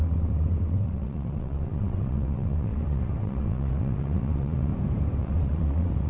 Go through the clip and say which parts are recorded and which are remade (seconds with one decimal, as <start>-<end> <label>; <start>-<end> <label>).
0.0-4.7 remade; 4.7-5.2 recorded; 5.2-6.1 remade